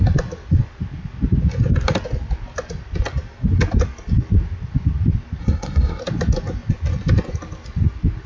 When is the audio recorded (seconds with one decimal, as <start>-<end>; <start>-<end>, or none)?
0.0-5.4; 6.0-8.3